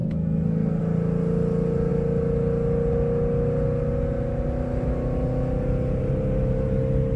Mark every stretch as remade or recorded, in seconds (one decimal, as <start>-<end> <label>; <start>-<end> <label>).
0.0-0.8 remade; 0.8-7.2 recorded